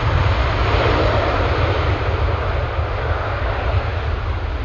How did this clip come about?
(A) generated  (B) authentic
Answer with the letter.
B